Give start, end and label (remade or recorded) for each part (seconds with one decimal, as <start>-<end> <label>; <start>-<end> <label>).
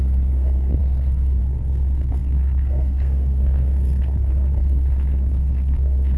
0.0-6.2 remade